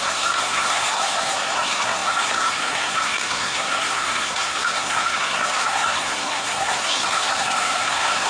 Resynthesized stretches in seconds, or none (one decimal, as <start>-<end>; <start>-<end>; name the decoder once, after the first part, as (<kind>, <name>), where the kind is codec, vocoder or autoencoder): 0.0-8.3 (codec, SNAC)